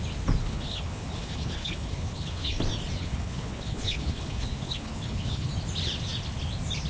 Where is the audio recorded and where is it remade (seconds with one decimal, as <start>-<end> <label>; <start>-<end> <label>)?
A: 0.0-0.4 recorded; 0.4-2.6 remade; 2.6-3.0 recorded; 3.0-5.5 remade; 5.5-6.9 recorded